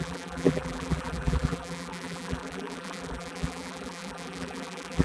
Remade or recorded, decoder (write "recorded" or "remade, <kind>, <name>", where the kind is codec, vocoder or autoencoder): remade, vocoder, BigVGAN v2